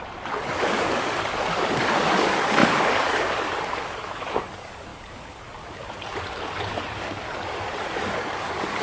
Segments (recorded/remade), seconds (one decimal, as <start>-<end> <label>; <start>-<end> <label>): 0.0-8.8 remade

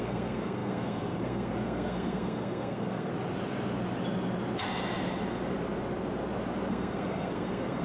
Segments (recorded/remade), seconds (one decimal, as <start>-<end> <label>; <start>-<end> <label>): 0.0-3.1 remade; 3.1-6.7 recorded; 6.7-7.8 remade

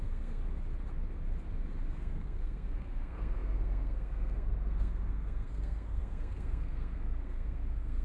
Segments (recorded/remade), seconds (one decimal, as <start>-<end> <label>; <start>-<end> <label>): 0.0-0.4 remade; 0.4-1.9 recorded; 1.9-8.0 remade

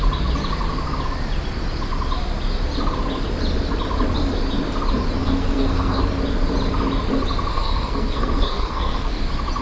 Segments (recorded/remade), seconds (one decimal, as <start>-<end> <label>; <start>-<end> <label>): 0.0-5.2 recorded; 5.2-6.0 remade; 6.0-7.5 recorded; 7.5-9.2 remade; 9.2-9.6 recorded